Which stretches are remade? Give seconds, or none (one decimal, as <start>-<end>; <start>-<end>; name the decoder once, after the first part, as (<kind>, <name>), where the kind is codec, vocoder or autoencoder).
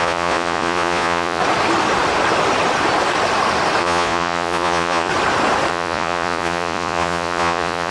0.0-1.4 (vocoder, Vocos); 3.8-5.1; 5.7-7.9